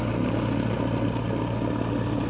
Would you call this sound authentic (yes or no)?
yes